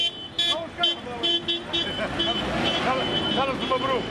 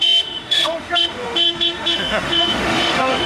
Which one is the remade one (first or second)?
second